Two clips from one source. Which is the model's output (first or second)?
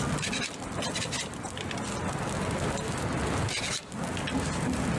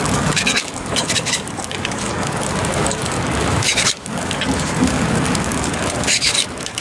second